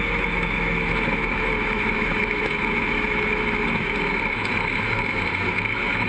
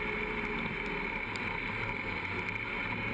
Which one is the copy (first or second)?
first